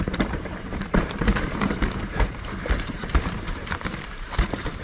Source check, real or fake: fake